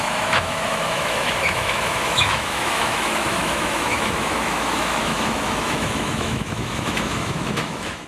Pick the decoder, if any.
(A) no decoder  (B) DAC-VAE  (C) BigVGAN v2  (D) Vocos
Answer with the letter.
B